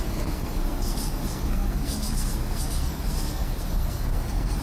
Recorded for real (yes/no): no